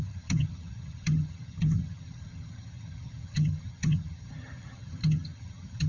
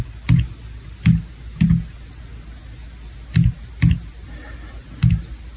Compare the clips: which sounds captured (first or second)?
second